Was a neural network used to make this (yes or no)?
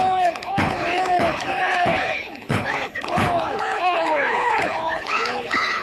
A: yes